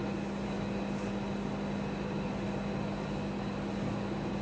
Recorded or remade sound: recorded